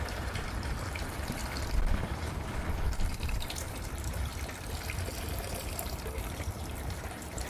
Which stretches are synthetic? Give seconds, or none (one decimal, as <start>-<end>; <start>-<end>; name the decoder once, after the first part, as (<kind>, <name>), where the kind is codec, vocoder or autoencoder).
0.0-1.4 (vocoder, BigVGAN v2); 3.1-4.3; 5.2-7.5